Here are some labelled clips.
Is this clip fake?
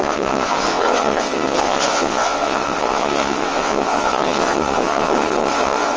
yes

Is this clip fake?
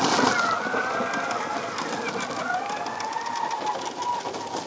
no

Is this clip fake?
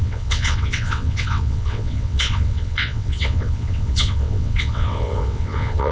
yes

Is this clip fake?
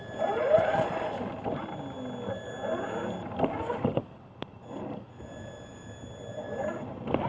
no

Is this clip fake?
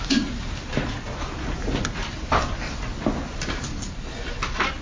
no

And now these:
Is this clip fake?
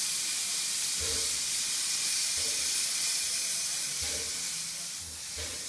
no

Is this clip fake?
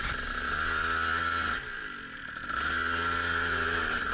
no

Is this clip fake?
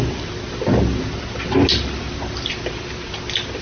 no